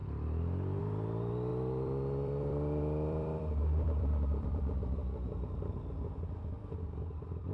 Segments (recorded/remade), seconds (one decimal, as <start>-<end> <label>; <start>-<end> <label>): 0.0-0.8 recorded; 0.8-7.5 remade